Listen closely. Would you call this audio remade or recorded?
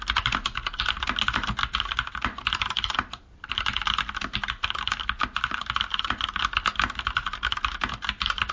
recorded